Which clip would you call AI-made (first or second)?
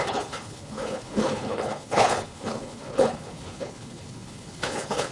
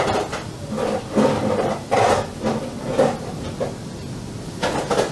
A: first